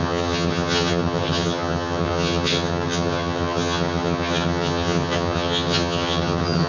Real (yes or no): no